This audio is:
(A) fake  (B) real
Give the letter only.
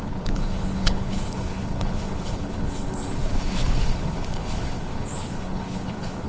A